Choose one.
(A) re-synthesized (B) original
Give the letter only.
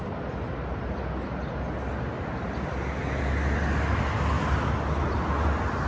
B